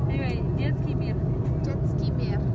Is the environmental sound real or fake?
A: real